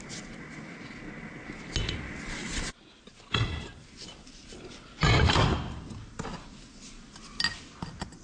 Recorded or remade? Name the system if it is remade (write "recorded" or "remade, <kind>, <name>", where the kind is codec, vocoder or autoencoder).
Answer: recorded